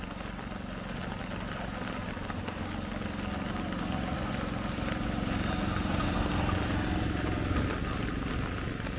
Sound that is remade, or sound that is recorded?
recorded